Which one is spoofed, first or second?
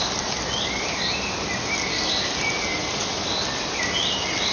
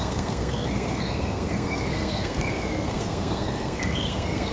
second